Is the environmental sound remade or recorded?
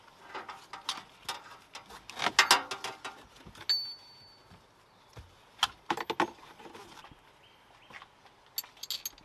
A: recorded